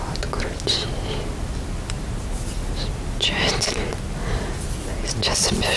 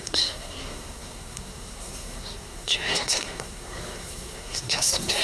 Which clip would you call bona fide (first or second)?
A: first